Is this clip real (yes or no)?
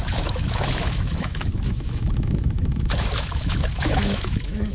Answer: no